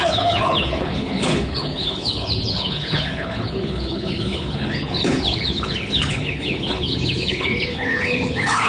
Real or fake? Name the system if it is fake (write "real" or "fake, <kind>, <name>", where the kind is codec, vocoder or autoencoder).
fake, codec, HILCodec